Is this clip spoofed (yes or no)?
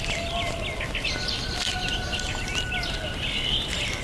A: no